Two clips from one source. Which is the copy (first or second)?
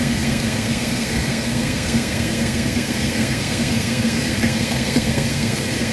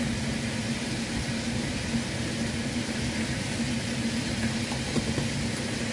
first